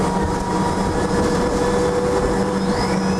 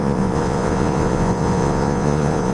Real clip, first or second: first